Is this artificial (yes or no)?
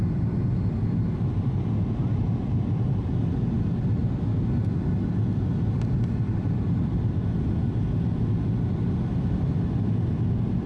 no